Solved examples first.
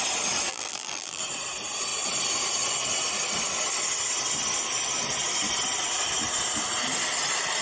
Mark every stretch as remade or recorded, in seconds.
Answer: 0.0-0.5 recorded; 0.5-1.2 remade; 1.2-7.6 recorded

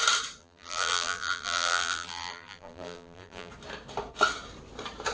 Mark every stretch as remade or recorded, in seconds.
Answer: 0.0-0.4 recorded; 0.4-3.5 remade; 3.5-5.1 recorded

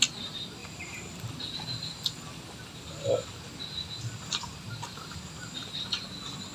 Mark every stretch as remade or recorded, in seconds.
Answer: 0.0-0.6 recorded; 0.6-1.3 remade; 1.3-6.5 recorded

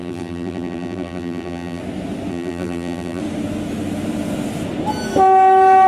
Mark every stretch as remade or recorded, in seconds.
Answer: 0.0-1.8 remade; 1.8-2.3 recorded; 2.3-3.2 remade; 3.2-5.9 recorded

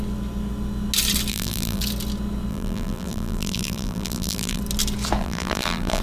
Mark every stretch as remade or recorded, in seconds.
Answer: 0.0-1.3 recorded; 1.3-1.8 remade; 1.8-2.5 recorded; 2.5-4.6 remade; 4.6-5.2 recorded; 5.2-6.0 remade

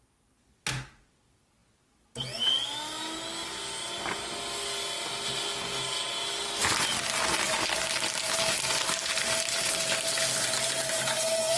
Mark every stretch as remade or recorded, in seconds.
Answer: 0.0-11.6 recorded